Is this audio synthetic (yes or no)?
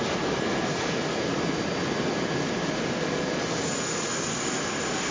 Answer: no